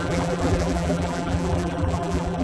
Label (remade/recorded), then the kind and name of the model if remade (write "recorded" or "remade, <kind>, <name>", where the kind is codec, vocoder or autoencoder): remade, vocoder, BigVGAN v2